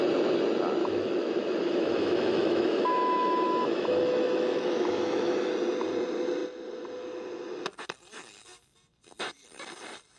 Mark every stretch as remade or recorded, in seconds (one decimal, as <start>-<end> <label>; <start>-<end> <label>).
0.0-0.8 recorded; 0.8-5.5 remade; 5.5-10.2 recorded